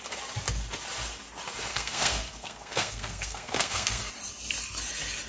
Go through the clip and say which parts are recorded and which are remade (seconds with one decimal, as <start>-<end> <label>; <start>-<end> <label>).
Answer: 0.0-1.7 recorded; 1.7-4.1 remade; 4.1-5.3 recorded